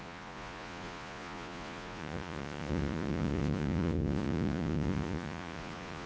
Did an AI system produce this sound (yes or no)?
yes